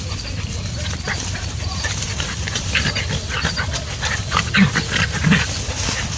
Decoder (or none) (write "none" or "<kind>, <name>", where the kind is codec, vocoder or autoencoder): none